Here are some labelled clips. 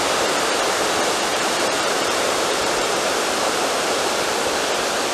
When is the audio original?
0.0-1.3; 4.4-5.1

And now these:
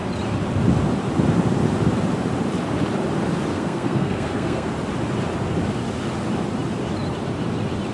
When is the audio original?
0.0-3.5; 4.7-7.9